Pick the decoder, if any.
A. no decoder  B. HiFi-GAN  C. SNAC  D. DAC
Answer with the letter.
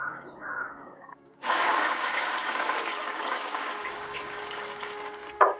D